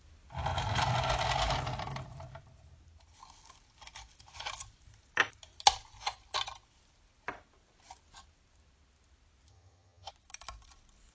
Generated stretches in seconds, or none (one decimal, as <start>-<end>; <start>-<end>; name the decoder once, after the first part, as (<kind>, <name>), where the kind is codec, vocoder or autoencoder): 9.5-10.1 (vocoder, HiFi-GAN)